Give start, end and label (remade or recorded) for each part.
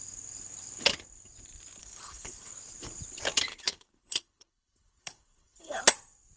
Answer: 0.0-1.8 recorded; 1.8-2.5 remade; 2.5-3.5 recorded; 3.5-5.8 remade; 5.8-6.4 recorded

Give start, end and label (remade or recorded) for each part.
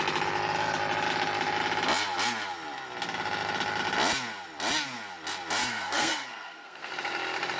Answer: 0.0-5.6 recorded; 5.6-6.9 remade; 6.9-7.6 recorded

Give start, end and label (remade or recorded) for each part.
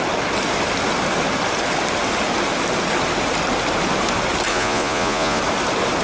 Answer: 0.0-4.5 recorded; 4.5-5.4 remade; 5.4-6.0 recorded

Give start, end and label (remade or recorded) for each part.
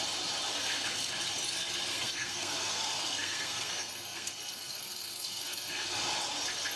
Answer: 0.0-0.5 recorded; 0.5-1.1 remade; 1.1-1.9 recorded; 1.9-6.0 remade; 6.0-6.8 recorded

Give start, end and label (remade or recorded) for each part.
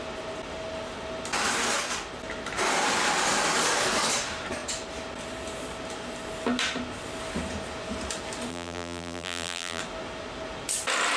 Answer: 0.0-8.5 recorded; 8.5-9.8 remade; 9.8-11.2 recorded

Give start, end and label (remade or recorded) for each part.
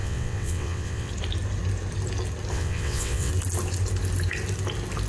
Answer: 0.0-1.1 remade; 1.1-2.5 recorded; 2.5-3.3 remade; 3.3-5.1 recorded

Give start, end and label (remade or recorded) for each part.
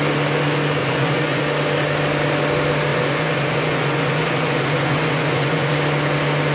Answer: 0.0-0.8 recorded; 0.8-1.4 remade; 1.4-2.9 recorded; 2.9-5.7 remade; 5.7-6.5 recorded